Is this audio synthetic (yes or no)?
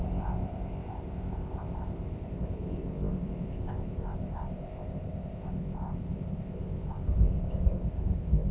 yes